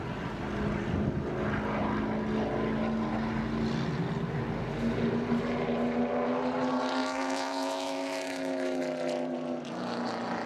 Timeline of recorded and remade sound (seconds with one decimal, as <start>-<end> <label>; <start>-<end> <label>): 0.0-7.0 recorded; 7.0-8.8 remade; 8.8-10.5 recorded